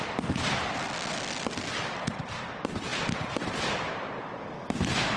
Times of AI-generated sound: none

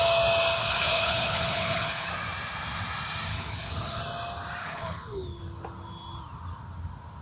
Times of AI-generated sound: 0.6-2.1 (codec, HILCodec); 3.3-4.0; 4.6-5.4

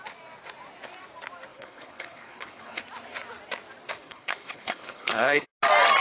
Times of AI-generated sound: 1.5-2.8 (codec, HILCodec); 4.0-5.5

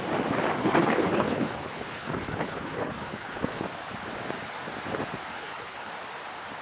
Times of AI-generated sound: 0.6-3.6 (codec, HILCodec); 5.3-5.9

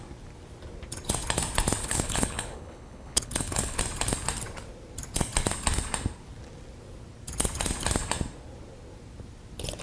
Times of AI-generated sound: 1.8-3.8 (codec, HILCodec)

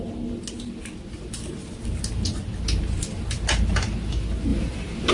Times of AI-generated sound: none

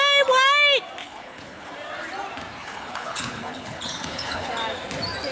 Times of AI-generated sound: 1.0-1.7 (codec, HILCodec); 2.6-4.5